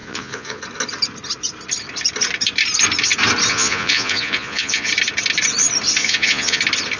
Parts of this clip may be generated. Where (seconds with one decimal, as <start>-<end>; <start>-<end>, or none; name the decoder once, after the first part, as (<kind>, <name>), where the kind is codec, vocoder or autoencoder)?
0.0-0.6 (vocoder, Vocos); 3.5-4.9; 6.0-6.6